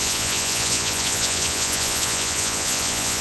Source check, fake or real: fake